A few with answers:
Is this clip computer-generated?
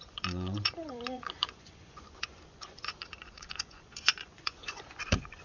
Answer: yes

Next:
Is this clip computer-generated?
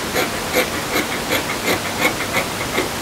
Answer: no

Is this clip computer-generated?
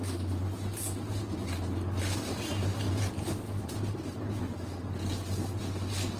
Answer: no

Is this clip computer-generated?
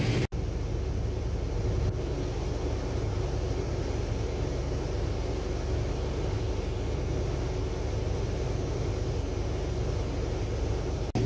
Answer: no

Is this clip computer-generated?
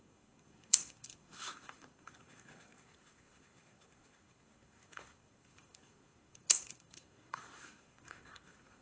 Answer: yes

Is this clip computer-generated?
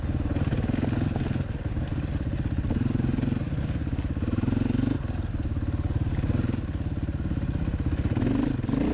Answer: no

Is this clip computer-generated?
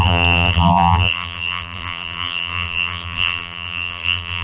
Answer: yes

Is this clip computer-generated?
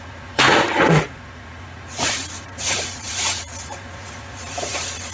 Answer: yes